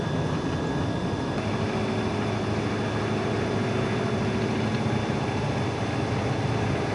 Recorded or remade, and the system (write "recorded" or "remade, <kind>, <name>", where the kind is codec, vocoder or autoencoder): recorded